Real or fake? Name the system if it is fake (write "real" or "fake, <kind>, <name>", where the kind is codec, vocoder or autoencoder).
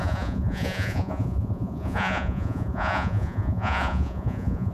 fake, vocoder, Vocos